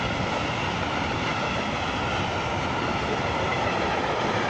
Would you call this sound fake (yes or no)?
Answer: no